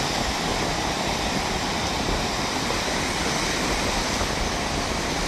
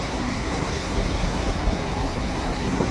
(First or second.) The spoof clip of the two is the second